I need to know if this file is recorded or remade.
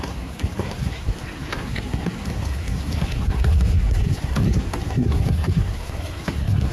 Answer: remade